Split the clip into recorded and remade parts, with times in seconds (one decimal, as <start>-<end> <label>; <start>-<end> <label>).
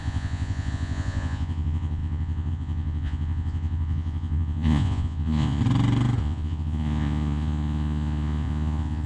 0.0-5.6 remade; 5.6-6.2 recorded; 6.2-9.1 remade